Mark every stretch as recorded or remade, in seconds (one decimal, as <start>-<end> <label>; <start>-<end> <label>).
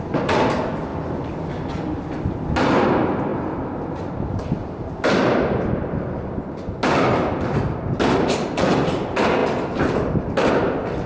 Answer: 0.0-11.1 recorded